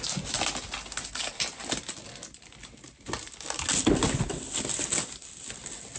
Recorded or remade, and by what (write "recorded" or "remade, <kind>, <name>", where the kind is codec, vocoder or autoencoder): recorded